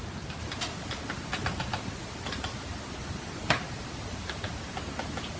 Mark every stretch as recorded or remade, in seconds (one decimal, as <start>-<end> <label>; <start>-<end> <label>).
0.0-5.4 recorded